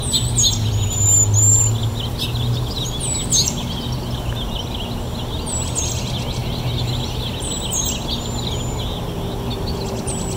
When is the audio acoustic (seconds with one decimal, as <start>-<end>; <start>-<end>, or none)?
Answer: 0.0-10.4